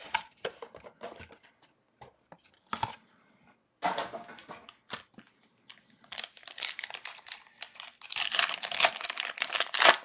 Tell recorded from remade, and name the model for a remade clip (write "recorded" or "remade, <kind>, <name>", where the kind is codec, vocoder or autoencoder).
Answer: recorded